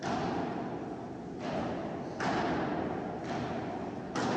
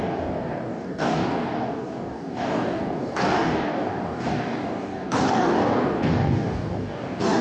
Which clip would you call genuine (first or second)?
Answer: first